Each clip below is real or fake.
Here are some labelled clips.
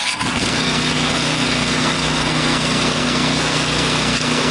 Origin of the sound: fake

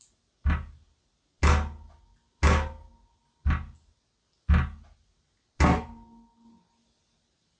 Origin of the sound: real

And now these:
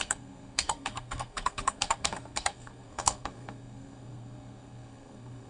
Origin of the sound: fake